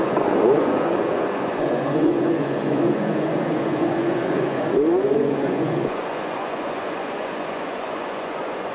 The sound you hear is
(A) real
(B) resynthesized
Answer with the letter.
B